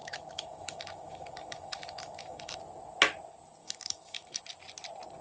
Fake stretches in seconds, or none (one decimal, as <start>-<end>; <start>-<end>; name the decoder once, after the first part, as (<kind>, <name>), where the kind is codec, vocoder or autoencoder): 0.0-2.6 (autoencoder, DAC-VAE); 3.6-4.4